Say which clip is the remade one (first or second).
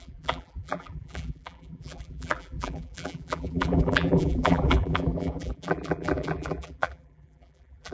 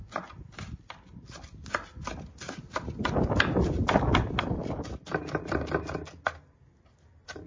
first